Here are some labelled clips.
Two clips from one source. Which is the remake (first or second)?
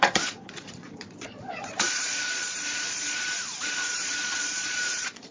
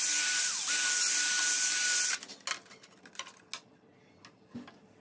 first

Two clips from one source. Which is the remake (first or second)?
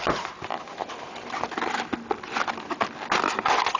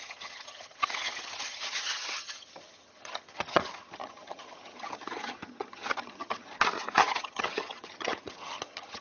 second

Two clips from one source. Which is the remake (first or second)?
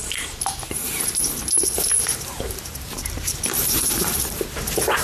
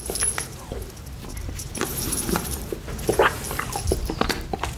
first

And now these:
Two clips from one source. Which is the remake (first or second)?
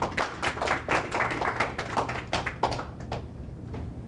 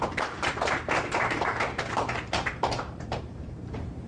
second